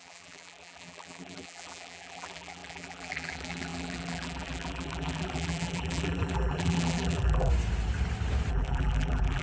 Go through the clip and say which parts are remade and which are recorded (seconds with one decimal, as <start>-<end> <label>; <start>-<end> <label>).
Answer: 0.0-7.5 remade; 7.5-8.5 recorded; 8.5-9.4 remade